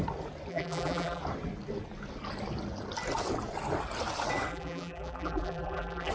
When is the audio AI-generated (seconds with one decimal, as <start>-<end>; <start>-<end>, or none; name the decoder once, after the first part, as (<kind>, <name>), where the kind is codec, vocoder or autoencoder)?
0.5-1.2 (vocoder, BigVGAN v2); 4.5-6.1